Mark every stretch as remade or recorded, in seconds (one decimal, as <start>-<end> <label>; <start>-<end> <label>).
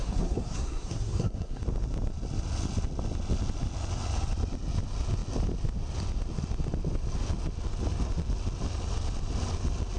0.0-1.6 remade; 1.6-10.0 recorded